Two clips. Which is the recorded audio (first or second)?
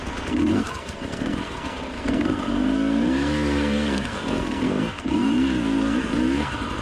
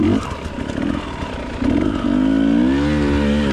second